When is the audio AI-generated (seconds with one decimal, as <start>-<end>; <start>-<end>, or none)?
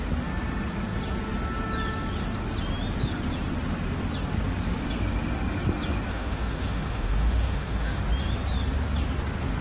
6.1-8.0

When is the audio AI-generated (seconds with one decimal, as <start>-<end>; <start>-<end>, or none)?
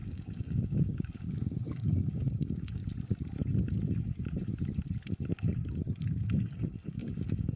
0.0-2.8; 6.1-7.6